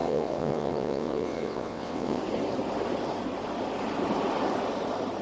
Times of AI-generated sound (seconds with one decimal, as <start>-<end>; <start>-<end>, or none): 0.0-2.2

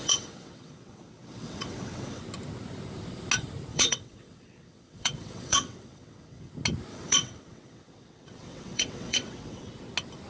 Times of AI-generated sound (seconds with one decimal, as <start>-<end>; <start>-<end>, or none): 0.0-2.2; 3.7-6.5; 6.9-9.7

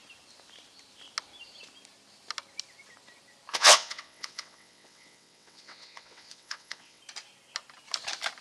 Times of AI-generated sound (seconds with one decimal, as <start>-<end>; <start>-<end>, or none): 3.5-7.0

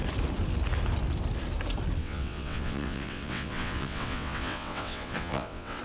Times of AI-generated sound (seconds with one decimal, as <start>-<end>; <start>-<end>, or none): 2.0-5.8

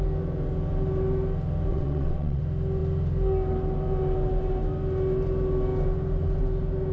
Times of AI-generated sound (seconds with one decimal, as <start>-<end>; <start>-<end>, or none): 1.7-2.4